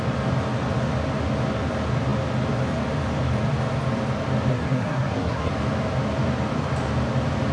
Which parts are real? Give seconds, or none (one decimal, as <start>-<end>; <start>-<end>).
0.0-4.5; 5.5-7.5